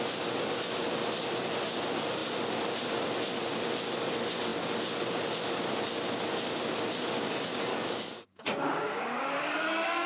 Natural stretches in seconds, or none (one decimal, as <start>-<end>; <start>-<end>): 0.0-7.7